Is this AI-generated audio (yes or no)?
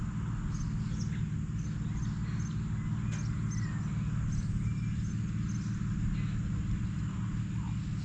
no